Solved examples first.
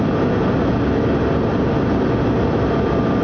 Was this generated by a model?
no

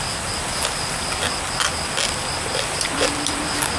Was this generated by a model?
no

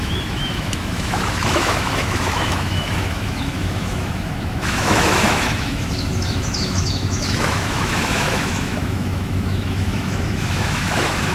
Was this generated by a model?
yes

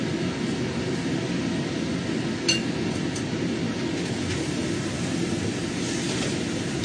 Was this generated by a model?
no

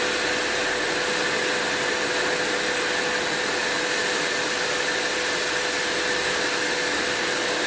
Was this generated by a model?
no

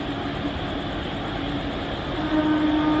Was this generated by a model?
no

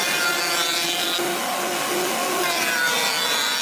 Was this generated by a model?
no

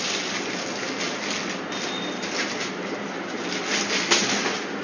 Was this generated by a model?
no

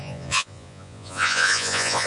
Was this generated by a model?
yes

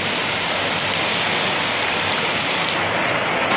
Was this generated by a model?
no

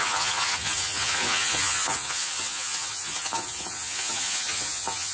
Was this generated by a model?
yes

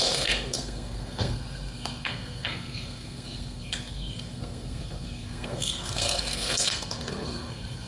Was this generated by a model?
yes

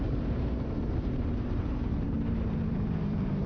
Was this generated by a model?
yes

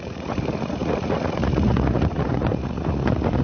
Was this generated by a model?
yes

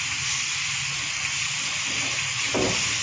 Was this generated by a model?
no